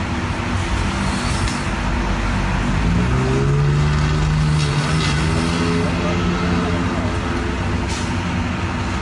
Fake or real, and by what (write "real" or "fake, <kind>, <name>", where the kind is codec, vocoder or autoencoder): real